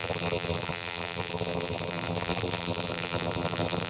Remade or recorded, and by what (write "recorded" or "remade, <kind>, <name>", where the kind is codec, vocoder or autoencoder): remade, vocoder, BigVGAN v2